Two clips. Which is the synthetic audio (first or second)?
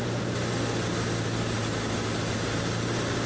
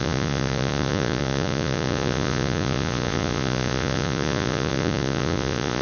second